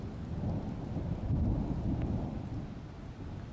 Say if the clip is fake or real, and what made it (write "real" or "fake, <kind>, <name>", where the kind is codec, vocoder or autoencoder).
real